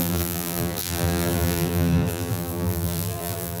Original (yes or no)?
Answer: no